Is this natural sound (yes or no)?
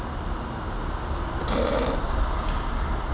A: yes